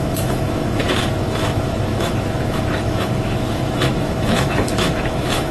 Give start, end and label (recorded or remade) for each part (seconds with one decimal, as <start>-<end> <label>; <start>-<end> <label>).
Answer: 0.0-5.5 remade